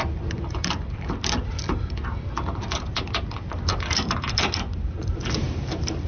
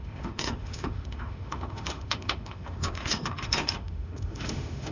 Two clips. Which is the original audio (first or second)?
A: first